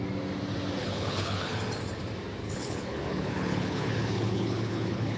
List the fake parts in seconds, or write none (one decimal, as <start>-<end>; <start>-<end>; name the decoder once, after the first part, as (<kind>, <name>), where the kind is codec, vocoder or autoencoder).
0.8-1.6 (codec, HILCodec); 2.4-5.2